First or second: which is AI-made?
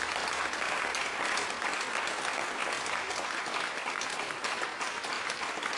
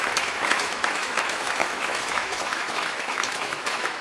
second